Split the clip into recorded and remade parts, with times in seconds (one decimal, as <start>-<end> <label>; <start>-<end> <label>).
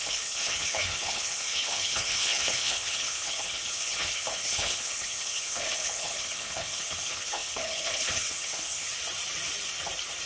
0.0-8.9 remade; 8.9-10.3 recorded